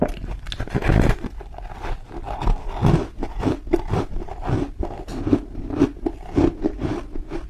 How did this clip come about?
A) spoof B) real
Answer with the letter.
B